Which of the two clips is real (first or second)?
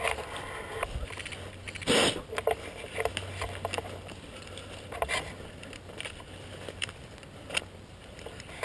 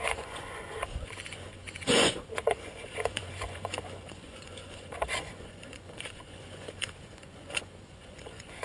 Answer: first